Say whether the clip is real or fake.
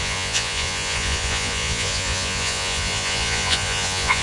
fake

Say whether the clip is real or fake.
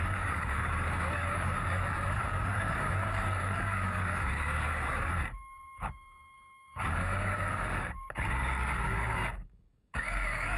fake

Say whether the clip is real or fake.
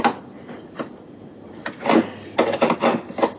real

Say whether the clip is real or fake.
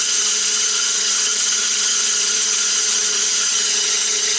fake